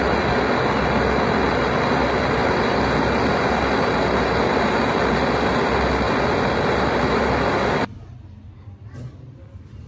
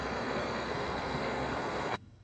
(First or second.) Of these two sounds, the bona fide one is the first